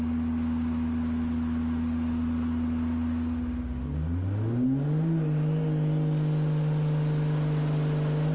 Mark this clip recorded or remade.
recorded